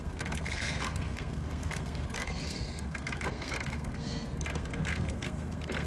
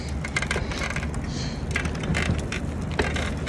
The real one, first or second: second